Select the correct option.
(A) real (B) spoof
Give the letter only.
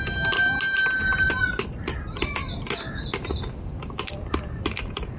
A